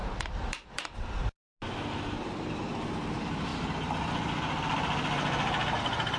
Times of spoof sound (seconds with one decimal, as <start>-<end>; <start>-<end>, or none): 0.0-1.4; 1.9-3.5; 5.8-6.2